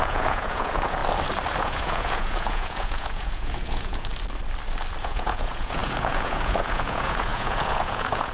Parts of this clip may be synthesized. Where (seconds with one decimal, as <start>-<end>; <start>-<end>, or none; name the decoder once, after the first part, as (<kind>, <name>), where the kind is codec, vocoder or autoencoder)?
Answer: 0.0-1.0 (vocoder, Vocos); 1.6-4.1; 5.0-8.3